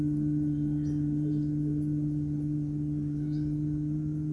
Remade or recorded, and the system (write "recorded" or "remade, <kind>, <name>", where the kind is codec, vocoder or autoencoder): recorded